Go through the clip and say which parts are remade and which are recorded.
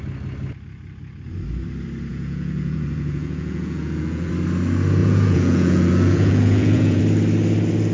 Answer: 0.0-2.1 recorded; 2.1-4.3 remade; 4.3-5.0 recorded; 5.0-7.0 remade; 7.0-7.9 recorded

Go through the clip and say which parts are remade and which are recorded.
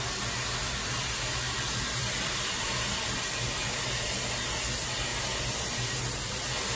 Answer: 0.0-2.0 recorded; 2.0-4.1 remade; 4.1-6.8 recorded